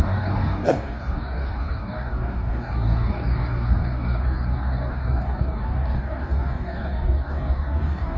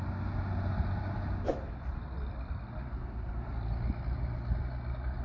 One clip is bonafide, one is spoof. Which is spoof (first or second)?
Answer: first